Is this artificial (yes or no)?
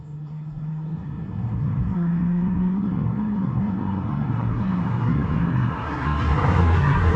yes